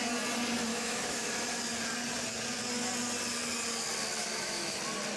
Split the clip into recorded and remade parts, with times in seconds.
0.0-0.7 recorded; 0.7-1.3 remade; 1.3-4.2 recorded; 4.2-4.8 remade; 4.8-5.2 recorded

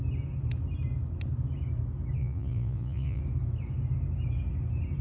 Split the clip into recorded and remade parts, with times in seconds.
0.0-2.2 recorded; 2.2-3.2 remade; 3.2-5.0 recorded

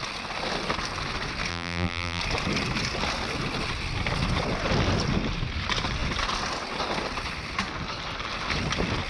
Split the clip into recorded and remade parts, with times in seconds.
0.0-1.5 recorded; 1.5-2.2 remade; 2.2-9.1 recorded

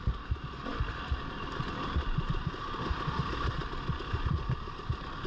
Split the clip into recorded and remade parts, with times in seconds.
0.0-5.3 recorded

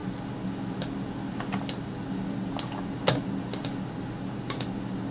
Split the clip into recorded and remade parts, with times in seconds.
0.0-5.1 recorded